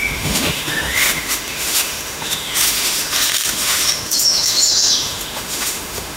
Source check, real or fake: fake